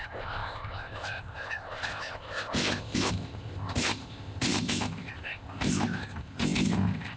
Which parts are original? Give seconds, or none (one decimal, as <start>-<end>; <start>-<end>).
none